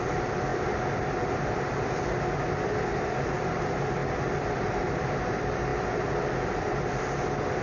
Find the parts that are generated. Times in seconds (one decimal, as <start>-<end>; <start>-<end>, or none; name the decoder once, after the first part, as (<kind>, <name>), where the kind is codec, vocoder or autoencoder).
0.0-4.0 (vocoder, BigVGAN v2); 4.5-5.7; 6.6-7.6